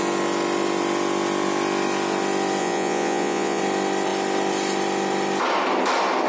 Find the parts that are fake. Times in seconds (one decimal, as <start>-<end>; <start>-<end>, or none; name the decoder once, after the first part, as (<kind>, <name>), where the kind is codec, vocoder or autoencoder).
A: 2.6-3.6 (vocoder, Vocos)